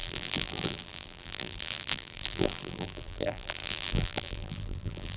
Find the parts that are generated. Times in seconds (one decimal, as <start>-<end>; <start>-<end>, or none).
0.0-5.2